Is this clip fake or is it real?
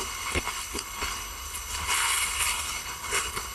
fake